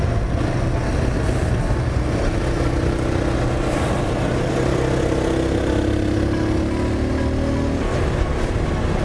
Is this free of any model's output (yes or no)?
yes